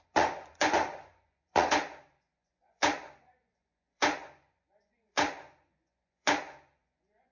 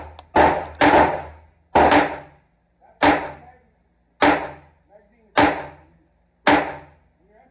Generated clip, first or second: first